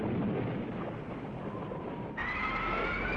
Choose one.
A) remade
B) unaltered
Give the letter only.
B